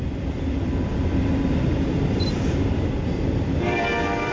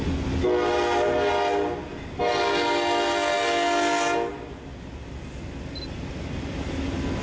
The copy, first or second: first